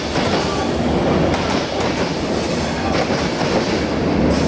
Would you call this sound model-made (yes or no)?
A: no